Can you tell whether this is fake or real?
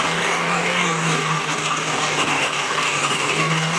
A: fake